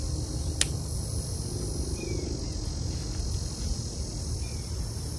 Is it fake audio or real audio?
real